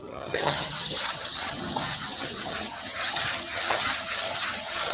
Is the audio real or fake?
fake